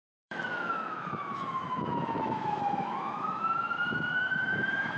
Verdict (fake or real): fake